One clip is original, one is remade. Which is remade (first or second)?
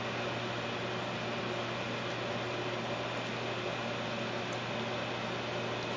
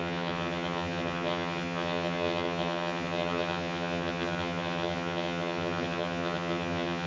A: second